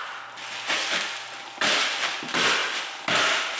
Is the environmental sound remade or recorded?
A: recorded